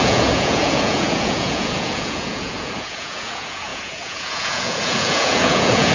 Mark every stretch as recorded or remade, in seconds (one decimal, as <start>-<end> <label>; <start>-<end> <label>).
0.0-5.9 remade